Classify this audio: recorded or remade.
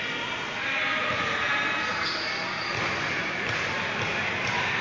recorded